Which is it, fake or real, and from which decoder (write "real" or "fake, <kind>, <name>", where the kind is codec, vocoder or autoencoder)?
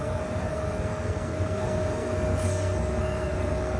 fake, codec, SNAC